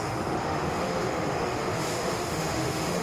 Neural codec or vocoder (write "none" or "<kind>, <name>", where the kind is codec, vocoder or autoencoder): autoencoder, DAC-VAE